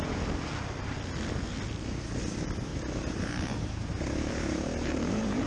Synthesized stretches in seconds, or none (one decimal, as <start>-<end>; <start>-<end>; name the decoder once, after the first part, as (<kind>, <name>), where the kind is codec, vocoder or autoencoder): 2.7-5.5 (vocoder, BigVGAN v2)